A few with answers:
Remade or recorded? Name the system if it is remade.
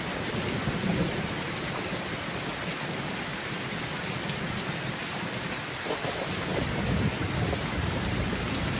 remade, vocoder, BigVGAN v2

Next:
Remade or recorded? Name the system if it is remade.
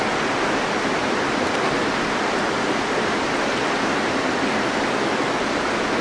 recorded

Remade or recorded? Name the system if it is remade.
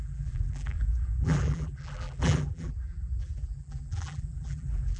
remade, vocoder, BigVGAN v2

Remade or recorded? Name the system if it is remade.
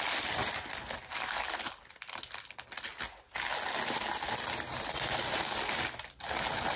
recorded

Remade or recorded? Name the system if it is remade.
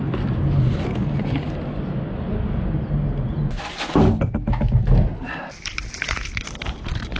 recorded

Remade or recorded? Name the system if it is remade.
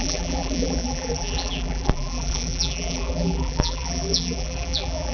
remade, vocoder, BigVGAN v2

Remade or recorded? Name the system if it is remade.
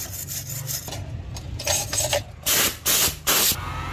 recorded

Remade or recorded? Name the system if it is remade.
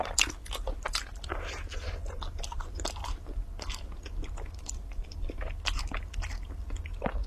recorded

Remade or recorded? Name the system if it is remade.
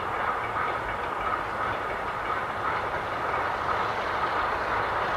recorded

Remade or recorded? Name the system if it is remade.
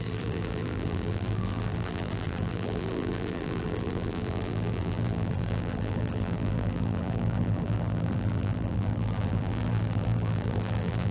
remade, vocoder, BigVGAN v2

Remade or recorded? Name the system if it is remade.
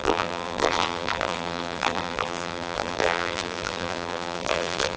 remade, vocoder, BigVGAN v2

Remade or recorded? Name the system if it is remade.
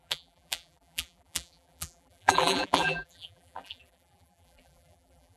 remade, vocoder, BigVGAN v2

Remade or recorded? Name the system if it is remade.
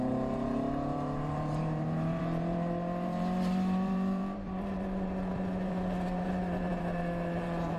remade, vocoder, BigVGAN v2